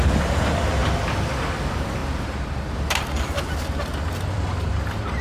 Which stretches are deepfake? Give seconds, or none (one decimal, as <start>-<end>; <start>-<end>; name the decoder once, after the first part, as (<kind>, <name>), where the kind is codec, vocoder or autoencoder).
0.8-1.3 (vocoder, BigVGAN v2); 2.0-2.5; 3.9-5.2